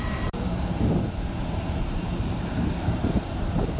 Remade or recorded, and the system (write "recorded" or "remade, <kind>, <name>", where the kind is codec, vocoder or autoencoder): remade, vocoder, BigVGAN v2